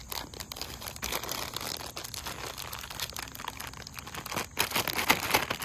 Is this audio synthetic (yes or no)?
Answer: no